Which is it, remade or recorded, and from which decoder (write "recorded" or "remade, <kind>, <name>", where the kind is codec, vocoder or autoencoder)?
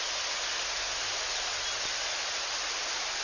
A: recorded